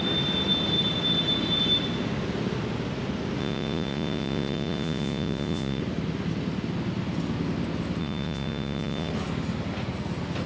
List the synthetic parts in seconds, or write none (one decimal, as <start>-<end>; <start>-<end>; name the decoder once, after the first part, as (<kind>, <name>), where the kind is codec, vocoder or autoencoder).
3.4-5.8 (vocoder, Vocos); 8.0-9.1